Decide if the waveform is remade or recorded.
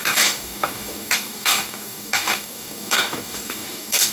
remade